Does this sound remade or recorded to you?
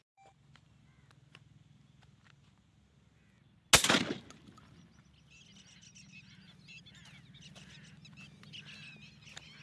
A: recorded